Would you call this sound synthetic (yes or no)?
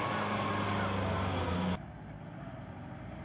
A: no